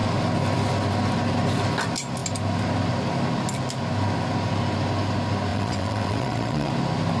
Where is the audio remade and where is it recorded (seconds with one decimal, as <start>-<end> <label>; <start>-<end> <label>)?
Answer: 0.0-5.5 recorded; 5.5-6.7 remade; 6.7-7.2 recorded